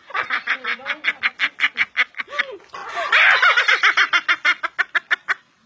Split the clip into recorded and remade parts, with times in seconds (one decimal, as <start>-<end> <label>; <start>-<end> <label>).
0.0-5.7 recorded